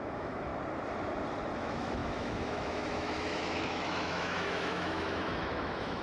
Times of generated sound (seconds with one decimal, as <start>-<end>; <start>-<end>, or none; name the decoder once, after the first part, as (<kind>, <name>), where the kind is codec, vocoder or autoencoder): 0.0-0.5 (autoencoder, DAC-VAE); 1.6-6.0